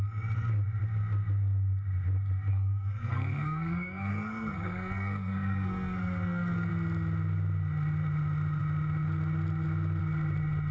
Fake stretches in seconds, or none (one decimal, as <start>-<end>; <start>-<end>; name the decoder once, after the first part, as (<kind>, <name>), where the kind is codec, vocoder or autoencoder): 2.5-6.7 (codec, SNAC)